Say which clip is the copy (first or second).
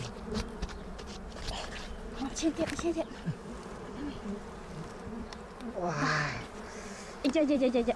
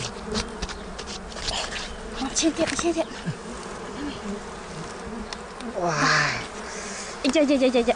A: first